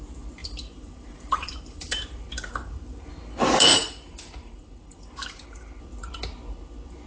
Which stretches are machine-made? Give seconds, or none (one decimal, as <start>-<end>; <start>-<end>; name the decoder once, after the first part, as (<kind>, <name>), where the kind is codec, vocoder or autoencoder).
0.4-3.1 (vocoder, BigVGAN v2); 3.7-5.8